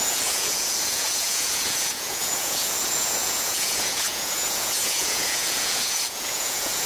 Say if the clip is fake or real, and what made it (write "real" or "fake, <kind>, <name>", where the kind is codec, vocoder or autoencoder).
fake, vocoder, Vocos